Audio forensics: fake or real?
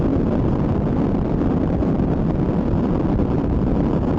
real